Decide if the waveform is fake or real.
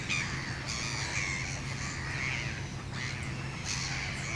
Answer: real